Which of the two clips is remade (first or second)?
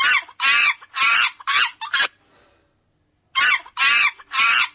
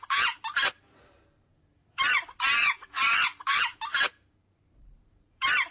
second